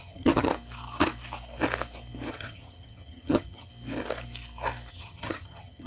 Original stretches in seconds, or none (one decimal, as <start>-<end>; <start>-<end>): 0.5-2.3; 3.7-4.9